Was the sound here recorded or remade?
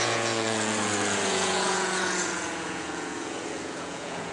remade